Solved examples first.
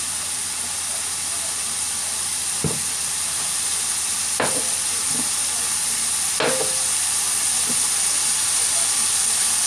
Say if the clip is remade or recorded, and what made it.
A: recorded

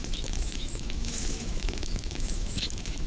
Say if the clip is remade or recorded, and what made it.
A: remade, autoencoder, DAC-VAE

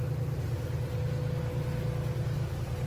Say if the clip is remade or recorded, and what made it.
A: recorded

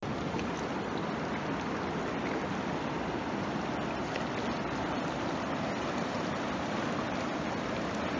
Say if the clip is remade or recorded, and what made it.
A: recorded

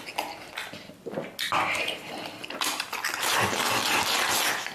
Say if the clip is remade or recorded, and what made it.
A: recorded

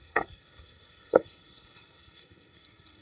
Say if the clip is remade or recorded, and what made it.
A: remade, codec, SNAC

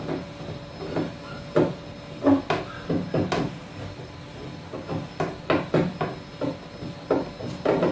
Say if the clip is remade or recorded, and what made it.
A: recorded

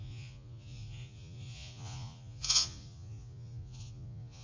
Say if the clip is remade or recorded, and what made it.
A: remade, vocoder, Vocos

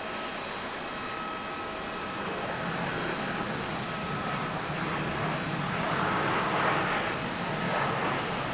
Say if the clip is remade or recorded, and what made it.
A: recorded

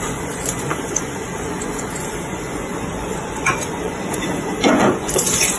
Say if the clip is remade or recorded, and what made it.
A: remade, vocoder, Vocos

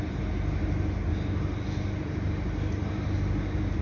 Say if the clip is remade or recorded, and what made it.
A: recorded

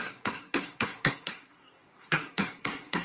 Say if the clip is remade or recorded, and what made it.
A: remade, codec, SNAC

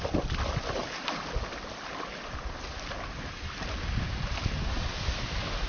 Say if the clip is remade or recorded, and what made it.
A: recorded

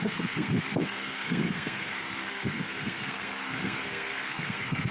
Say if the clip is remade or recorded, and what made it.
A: remade, codec, SNAC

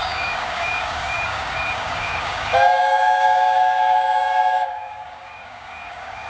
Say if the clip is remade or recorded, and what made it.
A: remade, codec, DAC